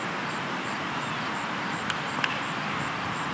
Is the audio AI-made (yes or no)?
no